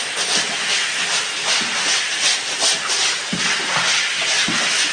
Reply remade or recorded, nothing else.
recorded